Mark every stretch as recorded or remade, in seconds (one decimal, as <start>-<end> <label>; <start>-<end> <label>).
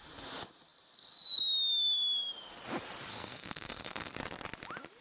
0.0-3.1 recorded; 3.1-4.1 remade; 4.1-5.0 recorded